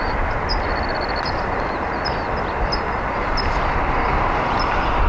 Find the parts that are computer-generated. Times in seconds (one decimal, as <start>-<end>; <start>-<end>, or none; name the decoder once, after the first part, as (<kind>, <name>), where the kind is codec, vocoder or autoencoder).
0.0-0.5 (vocoder, BigVGAN v2); 3.1-5.1